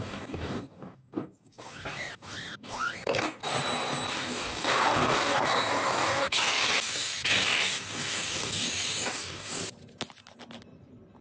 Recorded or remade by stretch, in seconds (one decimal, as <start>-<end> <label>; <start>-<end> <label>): 0.0-3.4 remade; 3.4-4.1 recorded; 4.1-9.6 remade; 9.6-11.2 recorded

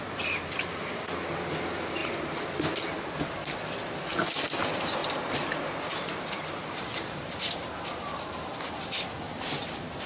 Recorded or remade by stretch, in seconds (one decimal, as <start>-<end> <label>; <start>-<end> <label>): 0.0-2.0 recorded; 2.0-3.1 remade; 3.1-5.0 recorded; 5.0-9.1 remade; 9.1-10.1 recorded

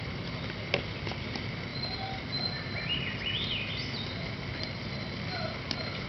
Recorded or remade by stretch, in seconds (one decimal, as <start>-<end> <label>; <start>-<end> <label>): 0.0-6.1 recorded